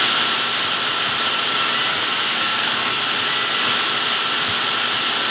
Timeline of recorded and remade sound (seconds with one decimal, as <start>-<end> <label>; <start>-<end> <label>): 0.0-1.9 recorded; 1.9-3.0 remade; 3.0-5.3 recorded